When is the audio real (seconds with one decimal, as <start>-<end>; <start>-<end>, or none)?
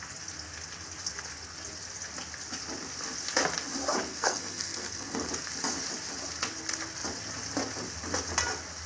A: 0.0-4.1; 5.3-8.9